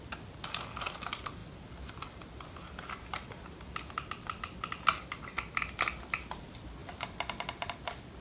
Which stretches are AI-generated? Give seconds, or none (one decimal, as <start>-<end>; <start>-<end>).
none